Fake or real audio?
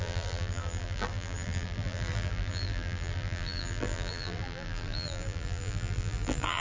fake